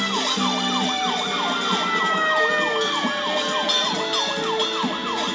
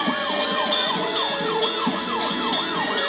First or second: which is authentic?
first